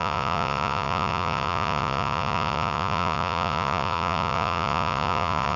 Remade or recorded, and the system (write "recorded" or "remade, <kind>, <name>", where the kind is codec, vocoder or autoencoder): remade, vocoder, Vocos